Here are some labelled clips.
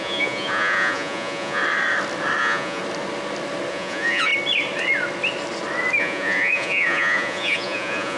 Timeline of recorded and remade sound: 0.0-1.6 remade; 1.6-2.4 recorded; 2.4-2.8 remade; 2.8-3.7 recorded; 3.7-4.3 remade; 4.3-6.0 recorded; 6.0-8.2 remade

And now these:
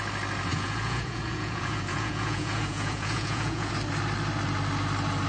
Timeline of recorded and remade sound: 0.0-0.5 recorded; 0.5-3.7 remade; 3.7-5.3 recorded

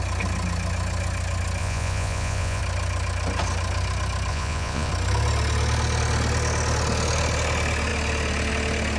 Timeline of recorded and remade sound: 0.0-1.6 recorded; 1.6-2.6 remade; 2.6-4.3 recorded; 4.3-4.9 remade; 4.9-9.0 recorded

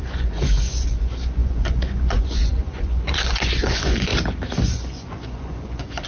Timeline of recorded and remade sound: 0.0-4.1 remade; 4.1-4.7 recorded; 4.7-6.1 remade

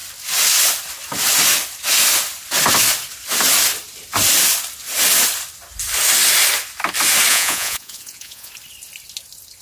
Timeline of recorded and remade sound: 0.0-7.3 recorded; 7.3-8.5 remade; 8.5-9.6 recorded

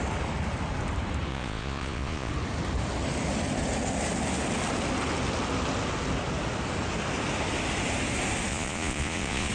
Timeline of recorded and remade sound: 0.0-1.3 recorded; 1.3-2.3 remade; 2.3-8.5 recorded; 8.5-9.5 remade

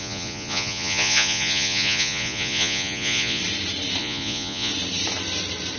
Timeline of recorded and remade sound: 0.0-3.4 remade; 3.4-4.0 recorded; 4.0-4.7 remade; 4.7-5.8 recorded